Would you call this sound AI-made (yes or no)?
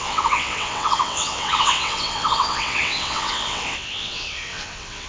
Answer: yes